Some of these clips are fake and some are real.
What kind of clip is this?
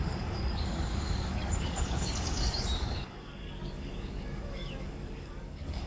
fake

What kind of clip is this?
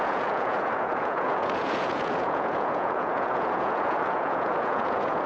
fake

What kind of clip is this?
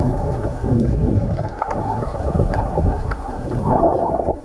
fake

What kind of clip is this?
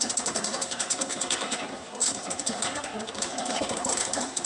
fake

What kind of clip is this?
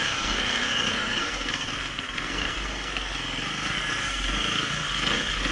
fake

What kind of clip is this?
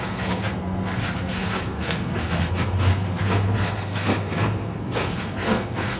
fake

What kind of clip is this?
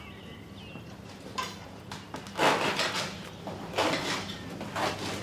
real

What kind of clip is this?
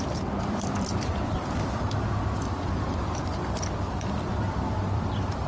fake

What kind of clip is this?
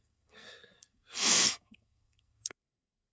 fake